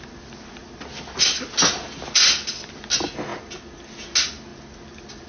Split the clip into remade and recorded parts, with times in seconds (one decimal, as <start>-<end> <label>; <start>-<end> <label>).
0.0-5.3 recorded